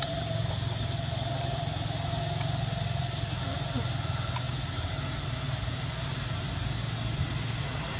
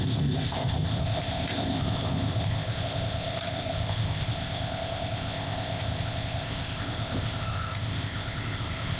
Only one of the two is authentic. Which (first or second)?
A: first